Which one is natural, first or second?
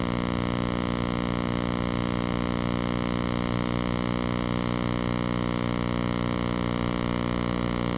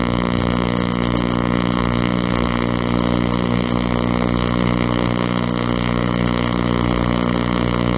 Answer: first